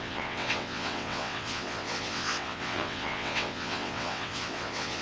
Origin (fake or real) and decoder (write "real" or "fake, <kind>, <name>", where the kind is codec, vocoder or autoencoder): fake, vocoder, WaveNeXt